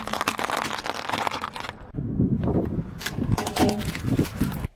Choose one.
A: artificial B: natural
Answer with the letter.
B